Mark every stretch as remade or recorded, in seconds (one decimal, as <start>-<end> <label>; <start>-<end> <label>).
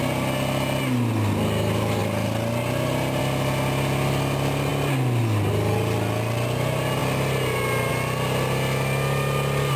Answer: 0.0-9.8 recorded